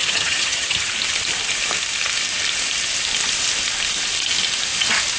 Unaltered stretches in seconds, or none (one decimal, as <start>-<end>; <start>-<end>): 0.9-5.2